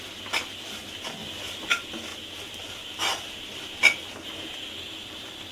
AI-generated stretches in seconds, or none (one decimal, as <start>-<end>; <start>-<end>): none

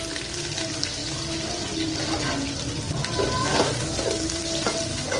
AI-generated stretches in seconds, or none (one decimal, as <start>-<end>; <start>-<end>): none

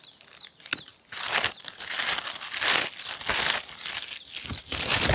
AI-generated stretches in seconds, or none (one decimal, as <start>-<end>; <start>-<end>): none